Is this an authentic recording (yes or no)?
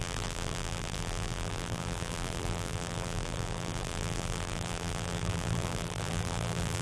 no